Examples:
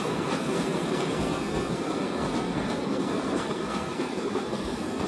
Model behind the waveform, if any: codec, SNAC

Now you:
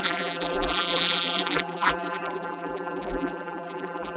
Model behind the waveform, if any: vocoder, BigVGAN v2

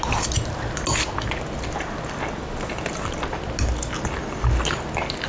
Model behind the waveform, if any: none